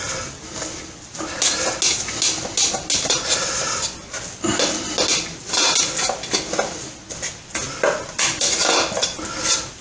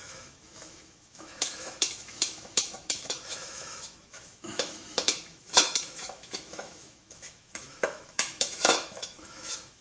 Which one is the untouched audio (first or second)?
first